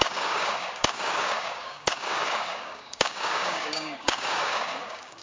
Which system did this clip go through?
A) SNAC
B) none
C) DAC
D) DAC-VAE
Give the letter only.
C